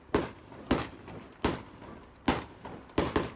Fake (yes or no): no